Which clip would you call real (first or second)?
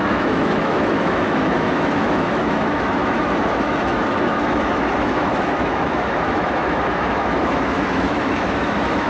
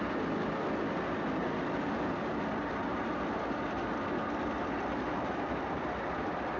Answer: second